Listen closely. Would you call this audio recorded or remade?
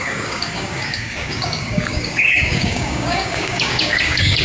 remade